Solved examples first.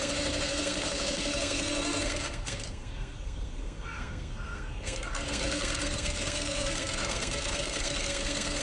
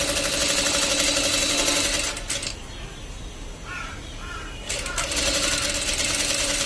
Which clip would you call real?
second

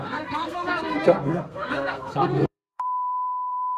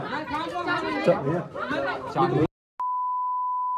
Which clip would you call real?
second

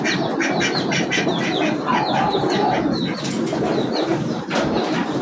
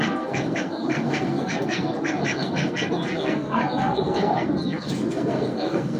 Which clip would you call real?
first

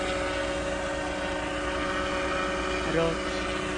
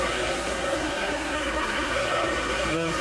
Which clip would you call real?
first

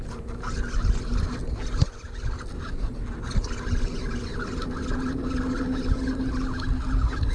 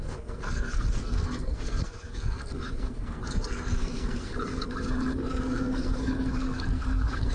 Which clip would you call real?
first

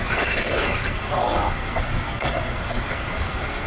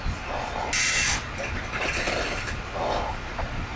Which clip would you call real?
second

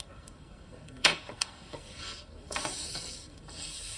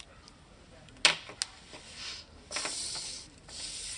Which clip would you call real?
second